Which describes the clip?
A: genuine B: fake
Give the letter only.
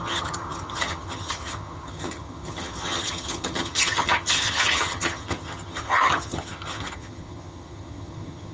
B